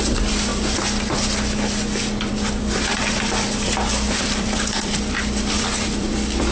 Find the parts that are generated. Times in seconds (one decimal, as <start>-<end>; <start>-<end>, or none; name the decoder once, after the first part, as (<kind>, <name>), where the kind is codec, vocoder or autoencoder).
0.5-1.4 (vocoder, BigVGAN v2); 2.3-6.5